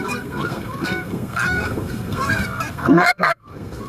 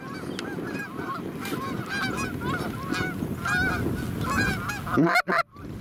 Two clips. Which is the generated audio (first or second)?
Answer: first